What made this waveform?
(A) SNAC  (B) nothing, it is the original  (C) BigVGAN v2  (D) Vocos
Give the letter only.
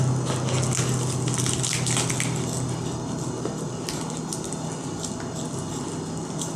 B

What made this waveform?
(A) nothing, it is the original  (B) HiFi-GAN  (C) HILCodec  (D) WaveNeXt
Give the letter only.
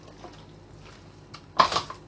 A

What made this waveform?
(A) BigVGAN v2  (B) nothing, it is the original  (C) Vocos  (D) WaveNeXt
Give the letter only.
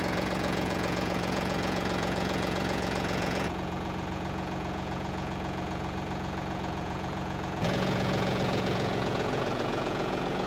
C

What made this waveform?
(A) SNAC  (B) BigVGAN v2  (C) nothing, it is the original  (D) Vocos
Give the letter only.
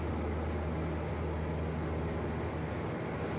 C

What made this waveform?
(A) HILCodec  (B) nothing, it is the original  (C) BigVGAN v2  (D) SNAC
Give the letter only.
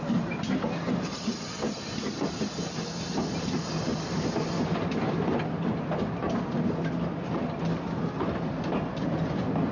B